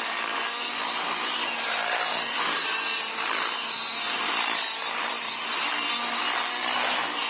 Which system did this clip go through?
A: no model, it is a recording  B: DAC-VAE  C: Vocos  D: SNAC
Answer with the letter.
A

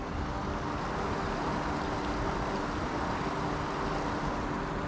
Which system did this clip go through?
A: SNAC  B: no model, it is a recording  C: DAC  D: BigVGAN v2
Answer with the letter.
B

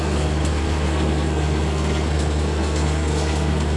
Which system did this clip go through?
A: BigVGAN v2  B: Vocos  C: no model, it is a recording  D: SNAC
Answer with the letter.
D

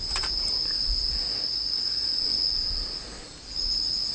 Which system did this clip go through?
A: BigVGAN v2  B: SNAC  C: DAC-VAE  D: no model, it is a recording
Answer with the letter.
D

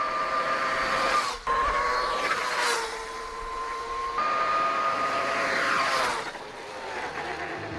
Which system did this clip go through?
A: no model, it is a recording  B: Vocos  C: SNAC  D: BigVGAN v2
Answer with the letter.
A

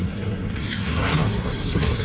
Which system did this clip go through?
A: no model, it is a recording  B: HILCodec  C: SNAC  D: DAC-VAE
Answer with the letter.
C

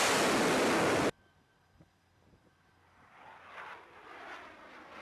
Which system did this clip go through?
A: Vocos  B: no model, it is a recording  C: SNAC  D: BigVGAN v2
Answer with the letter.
B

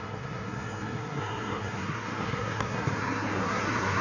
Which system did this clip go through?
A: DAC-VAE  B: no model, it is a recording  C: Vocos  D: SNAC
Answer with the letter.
D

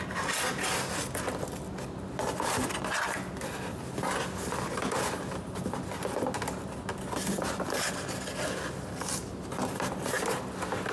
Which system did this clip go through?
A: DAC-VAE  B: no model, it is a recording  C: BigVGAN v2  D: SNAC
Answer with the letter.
B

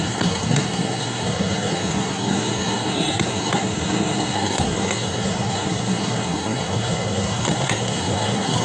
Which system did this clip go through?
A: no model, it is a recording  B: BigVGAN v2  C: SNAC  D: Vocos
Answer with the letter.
C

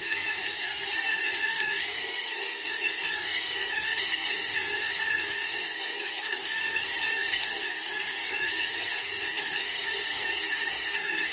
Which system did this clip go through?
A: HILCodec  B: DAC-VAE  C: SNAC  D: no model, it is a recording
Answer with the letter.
C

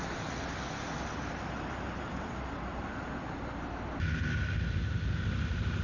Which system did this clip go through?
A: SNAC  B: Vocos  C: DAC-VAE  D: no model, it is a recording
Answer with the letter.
D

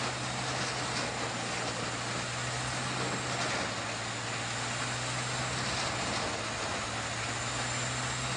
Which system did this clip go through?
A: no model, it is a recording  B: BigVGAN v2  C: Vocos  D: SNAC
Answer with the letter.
A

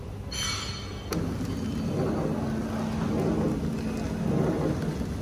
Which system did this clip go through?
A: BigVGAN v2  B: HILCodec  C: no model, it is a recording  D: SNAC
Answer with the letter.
C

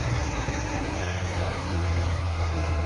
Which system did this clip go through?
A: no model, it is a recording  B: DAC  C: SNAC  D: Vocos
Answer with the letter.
C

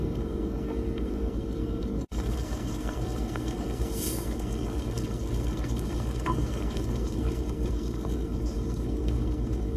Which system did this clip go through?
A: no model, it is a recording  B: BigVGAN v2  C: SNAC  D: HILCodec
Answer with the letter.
C